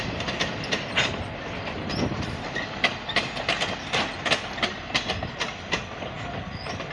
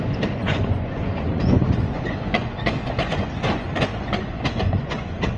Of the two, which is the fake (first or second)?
second